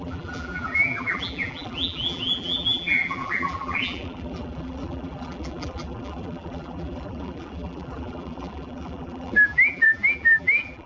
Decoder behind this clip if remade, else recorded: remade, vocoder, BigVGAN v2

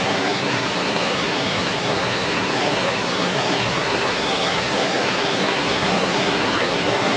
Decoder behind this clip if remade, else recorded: remade, codec, SNAC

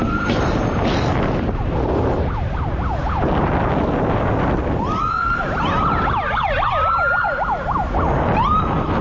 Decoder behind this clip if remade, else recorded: recorded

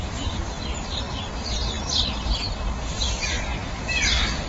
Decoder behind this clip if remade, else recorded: recorded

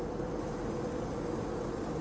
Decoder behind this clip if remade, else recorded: recorded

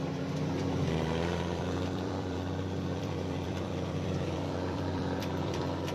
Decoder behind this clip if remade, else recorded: remade, vocoder, BigVGAN v2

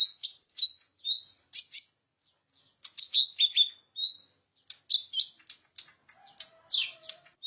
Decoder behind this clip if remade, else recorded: recorded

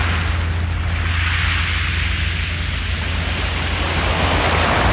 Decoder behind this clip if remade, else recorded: recorded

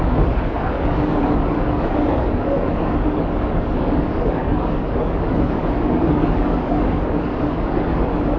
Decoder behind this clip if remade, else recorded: remade, codec, DAC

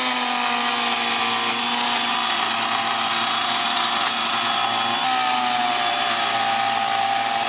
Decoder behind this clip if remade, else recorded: recorded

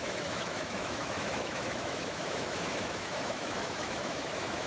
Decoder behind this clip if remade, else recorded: remade, autoencoder, DAC-VAE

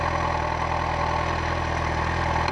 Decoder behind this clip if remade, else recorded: recorded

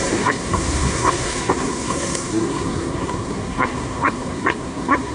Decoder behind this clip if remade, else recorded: remade, codec, SNAC